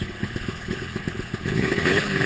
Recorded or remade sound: remade